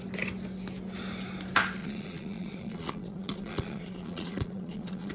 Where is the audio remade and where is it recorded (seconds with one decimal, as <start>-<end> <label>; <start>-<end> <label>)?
0.0-1.8 recorded; 1.8-5.1 remade